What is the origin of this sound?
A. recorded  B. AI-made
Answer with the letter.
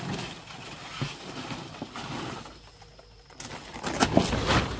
A